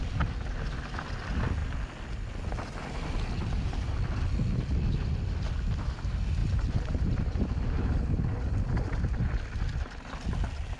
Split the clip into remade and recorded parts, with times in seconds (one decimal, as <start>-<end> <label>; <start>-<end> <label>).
0.0-6.4 recorded; 6.4-9.0 remade; 9.0-10.8 recorded